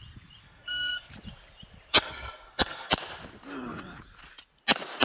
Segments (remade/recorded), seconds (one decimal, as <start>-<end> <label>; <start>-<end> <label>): 0.0-0.4 recorded; 0.4-1.1 remade; 1.1-1.9 recorded; 1.9-2.9 remade; 2.9-5.0 recorded